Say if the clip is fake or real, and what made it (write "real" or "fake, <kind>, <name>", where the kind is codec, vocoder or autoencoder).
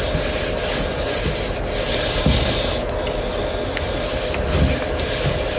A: real